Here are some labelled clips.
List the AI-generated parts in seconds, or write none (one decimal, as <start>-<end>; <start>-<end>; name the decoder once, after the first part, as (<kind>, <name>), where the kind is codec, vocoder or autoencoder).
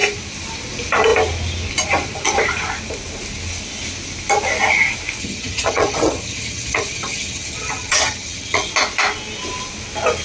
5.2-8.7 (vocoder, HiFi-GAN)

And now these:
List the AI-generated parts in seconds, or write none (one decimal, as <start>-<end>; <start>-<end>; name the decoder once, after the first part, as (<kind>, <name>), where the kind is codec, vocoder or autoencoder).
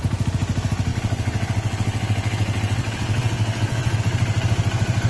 0.9-4.0 (vocoder, WaveNeXt)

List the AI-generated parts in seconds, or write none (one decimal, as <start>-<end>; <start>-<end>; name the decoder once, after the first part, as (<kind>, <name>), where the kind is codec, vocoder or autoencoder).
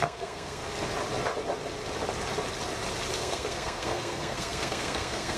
0.0-0.6 (codec, SNAC); 3.2-5.4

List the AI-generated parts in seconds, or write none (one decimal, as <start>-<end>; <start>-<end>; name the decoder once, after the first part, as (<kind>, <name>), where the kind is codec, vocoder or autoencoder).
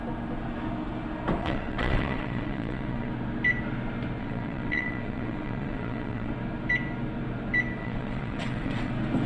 1.4-3.1 (vocoder, WaveNeXt); 4.2-6.3; 7.8-8.9